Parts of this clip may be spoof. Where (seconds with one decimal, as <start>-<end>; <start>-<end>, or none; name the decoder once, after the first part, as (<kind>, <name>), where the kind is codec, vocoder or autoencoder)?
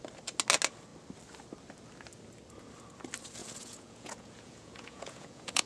3.4-5.7 (vocoder, Vocos)